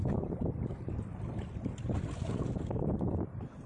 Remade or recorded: remade